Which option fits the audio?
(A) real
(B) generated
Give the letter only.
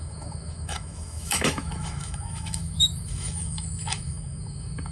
B